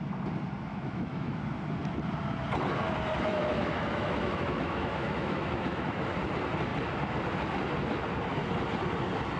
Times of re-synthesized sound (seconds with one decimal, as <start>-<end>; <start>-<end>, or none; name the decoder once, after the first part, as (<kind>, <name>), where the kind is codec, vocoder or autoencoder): 0.7-1.4 (autoencoder, DAC-VAE); 3.3-6.1